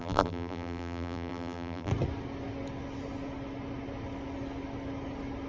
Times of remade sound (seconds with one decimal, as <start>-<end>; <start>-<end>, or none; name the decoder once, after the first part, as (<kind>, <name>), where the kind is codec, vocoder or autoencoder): 0.0-1.9 (vocoder, BigVGAN v2)